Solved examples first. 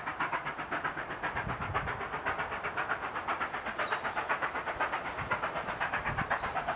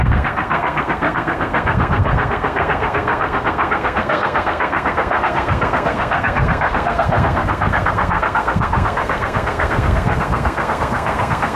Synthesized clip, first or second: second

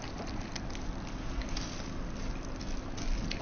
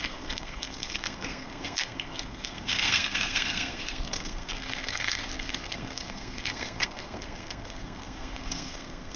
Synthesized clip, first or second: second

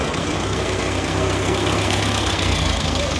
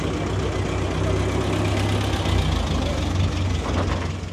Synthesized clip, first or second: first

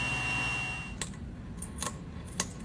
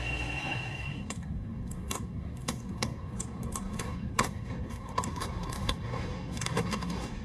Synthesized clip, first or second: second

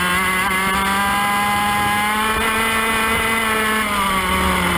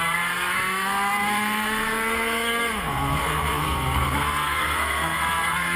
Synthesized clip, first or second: second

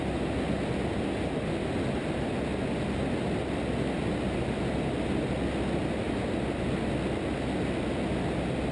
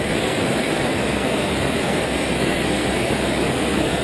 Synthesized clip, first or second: second